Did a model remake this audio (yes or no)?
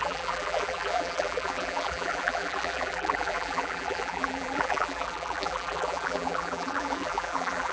yes